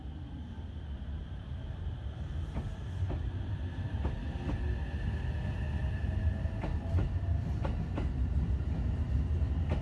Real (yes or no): yes